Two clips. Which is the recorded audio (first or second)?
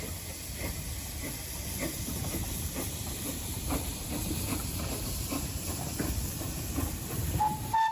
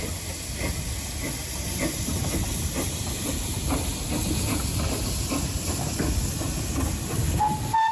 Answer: second